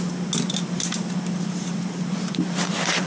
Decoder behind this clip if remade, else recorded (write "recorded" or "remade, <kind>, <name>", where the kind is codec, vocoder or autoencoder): recorded